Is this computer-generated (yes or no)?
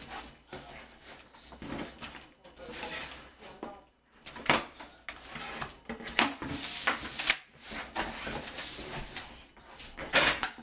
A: no